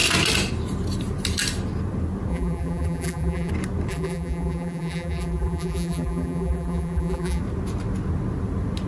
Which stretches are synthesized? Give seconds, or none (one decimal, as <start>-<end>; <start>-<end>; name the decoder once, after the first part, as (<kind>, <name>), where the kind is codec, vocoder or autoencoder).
2.3-3.5 (vocoder, BigVGAN v2); 3.9-7.4